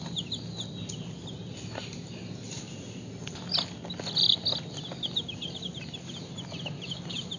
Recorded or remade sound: recorded